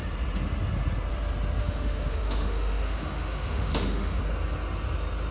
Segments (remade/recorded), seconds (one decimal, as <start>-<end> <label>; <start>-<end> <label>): 0.0-1.6 recorded; 1.6-4.2 remade; 4.2-5.3 recorded